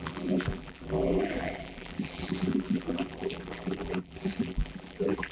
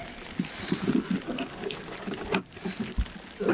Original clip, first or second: second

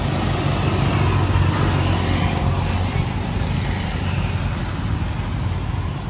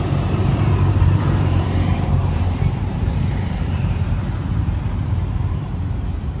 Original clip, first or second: first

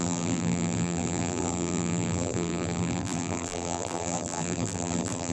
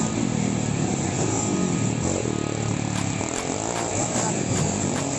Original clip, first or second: second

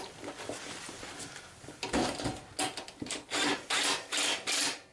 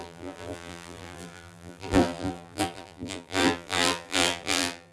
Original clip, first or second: first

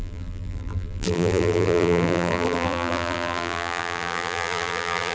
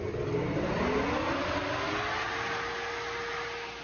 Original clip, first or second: second